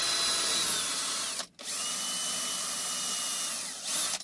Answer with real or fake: real